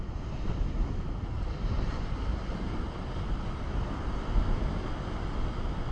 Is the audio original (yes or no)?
yes